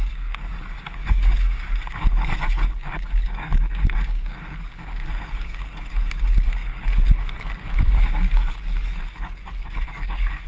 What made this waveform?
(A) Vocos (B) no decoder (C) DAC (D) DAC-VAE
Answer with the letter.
C